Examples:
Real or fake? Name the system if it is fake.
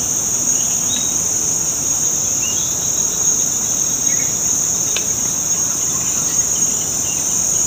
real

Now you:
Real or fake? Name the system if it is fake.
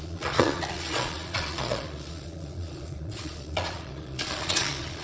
fake, vocoder, Vocos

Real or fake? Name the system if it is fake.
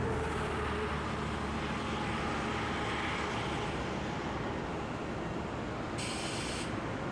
real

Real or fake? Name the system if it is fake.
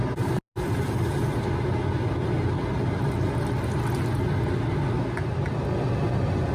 real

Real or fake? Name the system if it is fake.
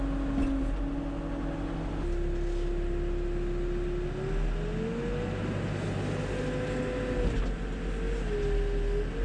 real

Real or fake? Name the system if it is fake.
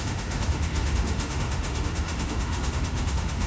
fake, autoencoder, DAC-VAE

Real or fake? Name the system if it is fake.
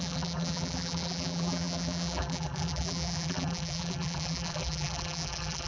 fake, vocoder, BigVGAN v2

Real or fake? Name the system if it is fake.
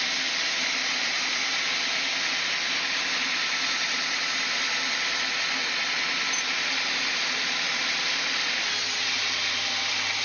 real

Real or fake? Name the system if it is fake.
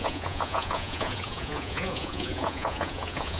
fake, vocoder, Vocos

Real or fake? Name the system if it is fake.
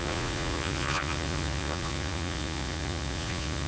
fake, vocoder, Vocos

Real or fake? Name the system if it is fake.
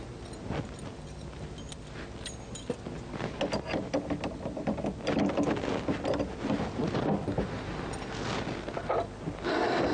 real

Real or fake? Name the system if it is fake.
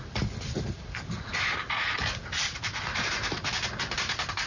real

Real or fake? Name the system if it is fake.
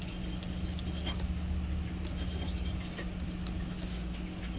real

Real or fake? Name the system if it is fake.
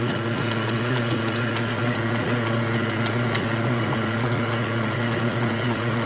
fake, vocoder, Vocos